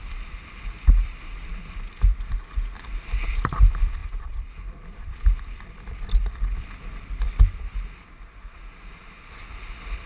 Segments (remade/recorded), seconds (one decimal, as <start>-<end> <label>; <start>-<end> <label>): 0.0-10.1 remade